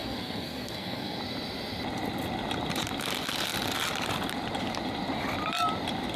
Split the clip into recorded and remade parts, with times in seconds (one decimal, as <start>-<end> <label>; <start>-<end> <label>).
0.0-1.2 remade; 1.2-6.2 recorded